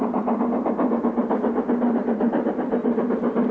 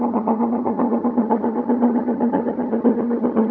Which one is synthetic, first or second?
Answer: second